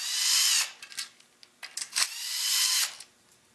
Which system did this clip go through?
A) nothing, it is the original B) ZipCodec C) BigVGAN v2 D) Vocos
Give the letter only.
A